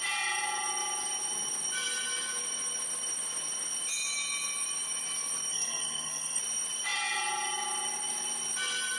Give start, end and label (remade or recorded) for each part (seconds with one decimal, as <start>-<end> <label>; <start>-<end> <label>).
0.0-5.5 recorded; 5.5-6.4 remade; 6.4-9.0 recorded